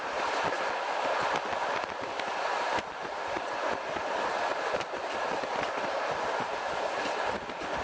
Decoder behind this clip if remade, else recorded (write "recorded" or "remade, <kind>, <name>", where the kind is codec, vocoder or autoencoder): recorded